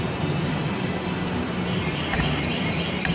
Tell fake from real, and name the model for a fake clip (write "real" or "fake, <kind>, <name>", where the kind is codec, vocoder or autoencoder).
fake, vocoder, BigVGAN v2